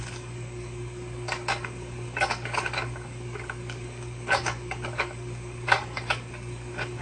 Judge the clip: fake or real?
fake